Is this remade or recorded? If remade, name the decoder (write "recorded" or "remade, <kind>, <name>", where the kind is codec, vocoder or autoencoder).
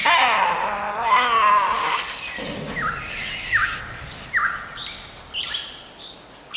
recorded